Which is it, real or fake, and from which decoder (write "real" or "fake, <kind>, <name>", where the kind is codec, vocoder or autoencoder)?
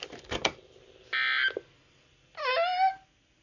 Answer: real